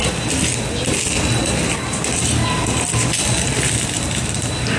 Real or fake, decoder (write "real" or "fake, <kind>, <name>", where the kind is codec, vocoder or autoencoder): real